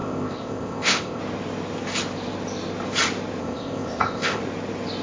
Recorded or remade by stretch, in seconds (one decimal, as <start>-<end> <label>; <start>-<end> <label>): 0.0-1.2 remade; 1.2-3.4 recorded; 3.4-4.4 remade; 4.4-5.0 recorded

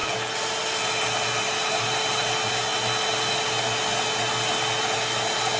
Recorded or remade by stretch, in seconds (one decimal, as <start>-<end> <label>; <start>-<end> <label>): 0.0-5.6 recorded

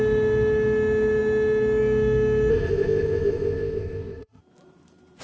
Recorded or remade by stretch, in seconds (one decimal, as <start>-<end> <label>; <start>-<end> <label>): 0.0-2.5 recorded; 2.5-4.4 remade; 4.4-5.2 recorded

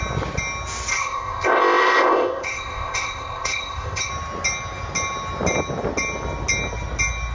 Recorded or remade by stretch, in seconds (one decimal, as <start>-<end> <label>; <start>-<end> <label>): 0.0-0.9 recorded; 0.9-4.1 remade; 4.1-7.3 recorded

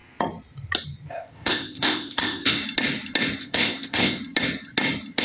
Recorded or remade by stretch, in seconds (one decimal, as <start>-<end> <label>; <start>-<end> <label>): 0.0-1.1 recorded; 1.1-2.6 remade; 2.6-3.4 recorded; 3.4-4.2 remade; 4.2-5.2 recorded

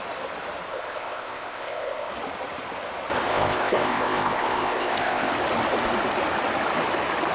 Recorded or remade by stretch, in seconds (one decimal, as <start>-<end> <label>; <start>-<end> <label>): 0.0-0.7 recorded; 0.7-2.1 remade; 2.1-3.3 recorded; 3.3-5.3 remade; 5.3-7.3 recorded

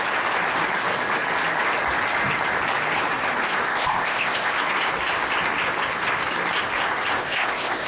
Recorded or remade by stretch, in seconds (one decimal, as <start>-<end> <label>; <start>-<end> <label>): 0.0-3.7 recorded; 3.7-4.6 remade; 4.6-7.2 recorded; 7.2-7.9 remade